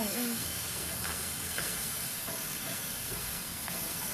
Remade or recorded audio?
remade